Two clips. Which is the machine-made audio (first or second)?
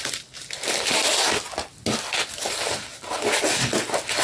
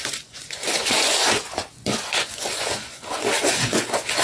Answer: second